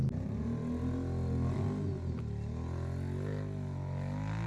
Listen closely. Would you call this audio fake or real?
real